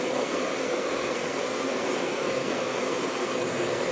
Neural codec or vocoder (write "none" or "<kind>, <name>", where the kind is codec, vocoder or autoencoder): codec, SNAC